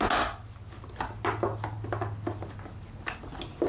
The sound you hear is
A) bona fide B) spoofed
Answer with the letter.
A